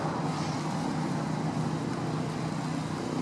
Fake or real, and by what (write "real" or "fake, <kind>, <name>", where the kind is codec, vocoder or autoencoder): real